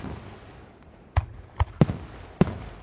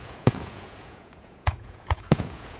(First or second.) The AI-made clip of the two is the second